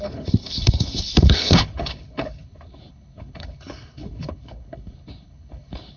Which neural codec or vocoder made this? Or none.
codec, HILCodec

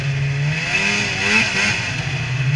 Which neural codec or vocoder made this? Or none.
none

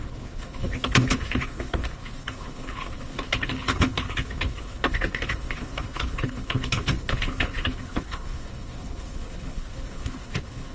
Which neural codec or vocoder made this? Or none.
codec, HILCodec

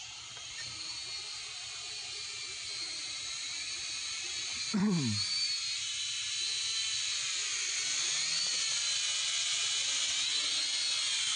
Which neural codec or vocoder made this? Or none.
none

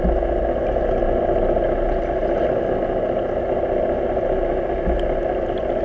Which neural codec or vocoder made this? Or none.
none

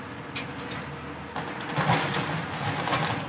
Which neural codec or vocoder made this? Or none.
none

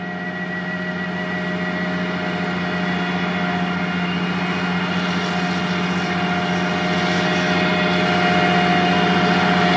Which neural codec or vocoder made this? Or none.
none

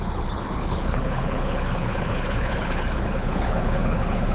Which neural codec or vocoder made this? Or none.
codec, HILCodec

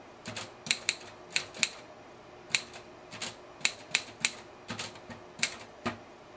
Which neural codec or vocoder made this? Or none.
none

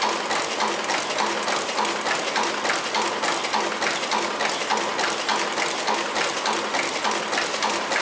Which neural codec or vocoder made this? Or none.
none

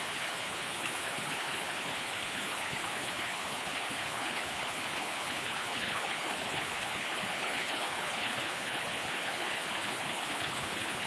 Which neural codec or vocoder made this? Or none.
codec, HILCodec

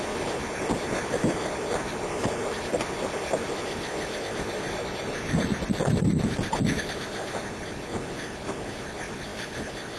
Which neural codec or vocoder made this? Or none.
none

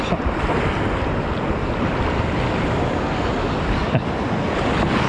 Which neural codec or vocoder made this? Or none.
none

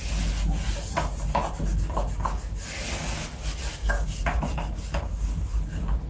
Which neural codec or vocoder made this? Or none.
none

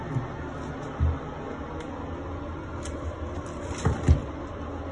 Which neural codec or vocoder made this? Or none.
none